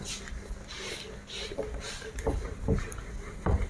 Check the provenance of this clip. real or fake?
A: real